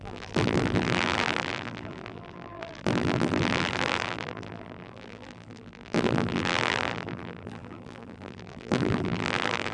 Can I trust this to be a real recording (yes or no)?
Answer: no